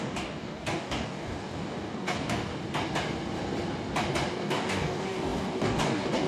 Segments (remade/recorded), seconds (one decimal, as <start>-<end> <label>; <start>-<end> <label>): 0.0-2.5 remade; 2.5-4.3 recorded; 4.3-6.3 remade